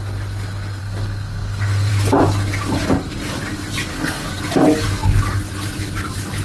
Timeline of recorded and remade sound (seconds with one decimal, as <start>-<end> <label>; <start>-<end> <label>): 0.0-0.8 recorded; 0.8-1.9 remade; 1.9-3.9 recorded; 3.9-4.4 remade; 4.4-6.4 recorded